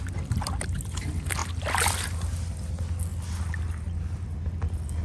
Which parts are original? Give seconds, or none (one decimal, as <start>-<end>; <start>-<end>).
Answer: 0.0-5.0